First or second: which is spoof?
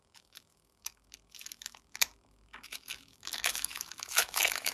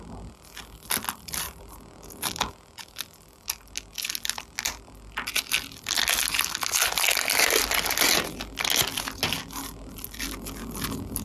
first